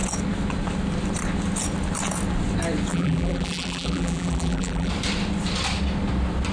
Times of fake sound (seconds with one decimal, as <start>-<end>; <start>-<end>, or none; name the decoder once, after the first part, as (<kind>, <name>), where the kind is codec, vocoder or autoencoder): 2.9-4.9 (vocoder, BigVGAN v2)